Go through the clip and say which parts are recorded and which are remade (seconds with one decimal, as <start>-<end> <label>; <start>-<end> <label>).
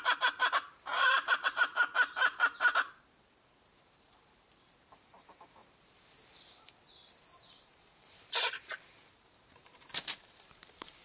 0.0-5.6 remade; 5.6-7.6 recorded; 7.6-11.0 remade